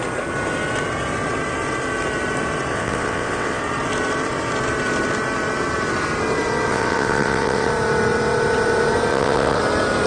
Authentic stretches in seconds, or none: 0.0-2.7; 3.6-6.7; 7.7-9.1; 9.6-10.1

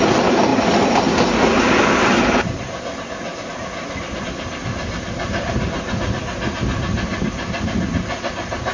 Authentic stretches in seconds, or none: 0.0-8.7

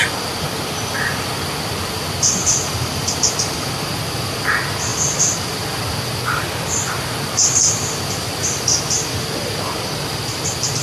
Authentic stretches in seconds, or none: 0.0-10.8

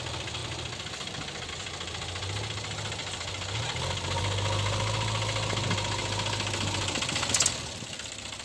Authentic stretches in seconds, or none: 0.0-8.4

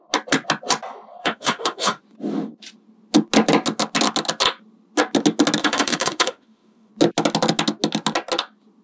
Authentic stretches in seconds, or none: 0.0-1.2; 2.0-5.6; 6.9-8.8

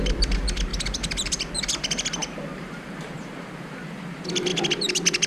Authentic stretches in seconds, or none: 4.5-5.3